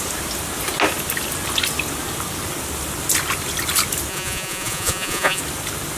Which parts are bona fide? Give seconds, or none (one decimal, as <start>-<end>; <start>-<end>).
0.0-4.1; 5.4-6.0